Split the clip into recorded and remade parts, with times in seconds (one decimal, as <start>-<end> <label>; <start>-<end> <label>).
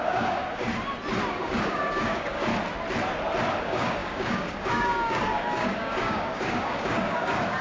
0.0-0.7 remade; 0.7-1.3 recorded; 1.3-2.5 remade; 2.5-3.6 recorded; 3.6-7.6 remade